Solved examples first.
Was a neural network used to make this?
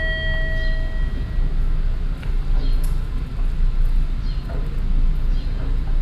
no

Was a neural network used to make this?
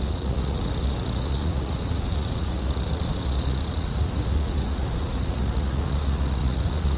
yes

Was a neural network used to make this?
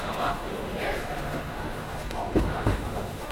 yes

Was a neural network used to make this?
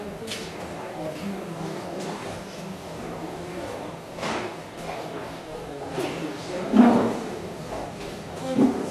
yes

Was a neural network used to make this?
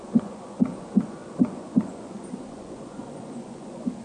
yes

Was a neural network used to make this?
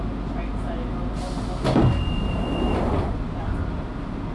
no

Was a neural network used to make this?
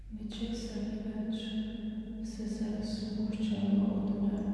yes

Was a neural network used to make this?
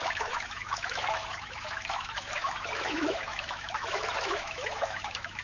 yes